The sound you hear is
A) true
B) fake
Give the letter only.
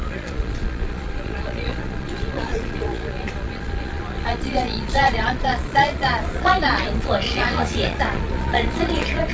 B